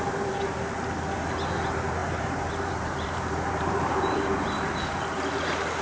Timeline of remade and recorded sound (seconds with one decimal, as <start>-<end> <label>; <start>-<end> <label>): 0.0-2.0 recorded; 2.0-4.7 remade; 4.7-5.8 recorded

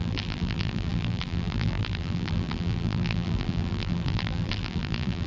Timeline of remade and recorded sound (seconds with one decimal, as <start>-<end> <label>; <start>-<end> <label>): 0.0-5.3 remade

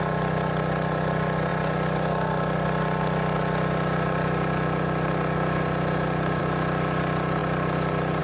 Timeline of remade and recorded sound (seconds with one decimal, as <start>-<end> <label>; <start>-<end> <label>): 0.0-8.2 recorded

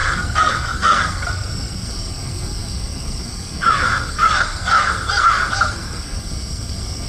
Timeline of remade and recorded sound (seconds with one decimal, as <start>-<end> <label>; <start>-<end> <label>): 0.0-7.1 remade

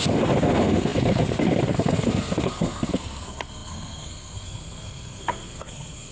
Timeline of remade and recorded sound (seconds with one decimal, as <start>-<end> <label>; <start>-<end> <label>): 0.0-6.1 remade

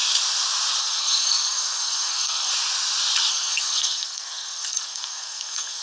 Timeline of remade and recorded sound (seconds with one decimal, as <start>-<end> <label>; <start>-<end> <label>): 0.0-0.8 recorded; 0.8-2.5 remade; 2.5-3.3 recorded; 3.3-5.8 remade